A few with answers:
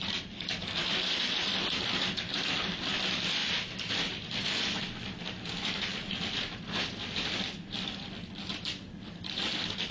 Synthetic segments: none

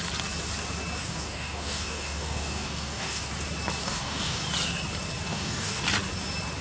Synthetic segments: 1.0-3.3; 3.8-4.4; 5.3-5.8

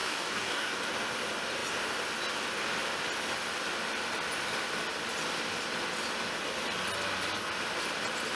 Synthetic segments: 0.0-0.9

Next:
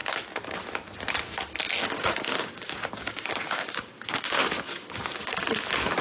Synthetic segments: 1.8-5.4